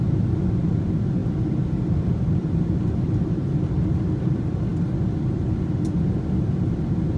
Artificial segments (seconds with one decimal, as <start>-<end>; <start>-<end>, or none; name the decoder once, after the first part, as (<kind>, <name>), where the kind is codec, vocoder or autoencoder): 0.0-4.7 (vocoder, BigVGAN v2)